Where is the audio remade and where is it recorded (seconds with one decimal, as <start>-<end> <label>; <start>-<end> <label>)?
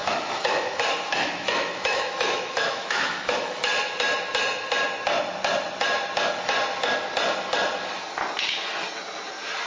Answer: 0.0-3.6 remade; 3.6-9.7 recorded